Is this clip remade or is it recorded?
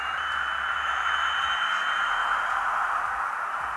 remade